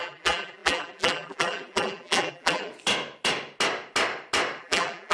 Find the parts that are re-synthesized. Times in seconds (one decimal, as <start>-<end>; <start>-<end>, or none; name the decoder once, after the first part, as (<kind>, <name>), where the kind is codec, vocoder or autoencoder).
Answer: 0.0-2.7 (vocoder, BigVGAN v2); 4.6-5.1